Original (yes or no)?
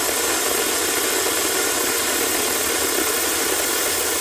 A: yes